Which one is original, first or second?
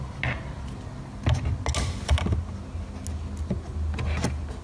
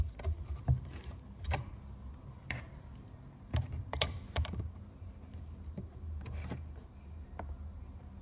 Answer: first